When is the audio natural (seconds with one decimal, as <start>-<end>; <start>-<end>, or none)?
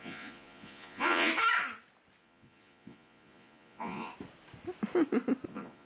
1.3-2.2; 4.1-5.5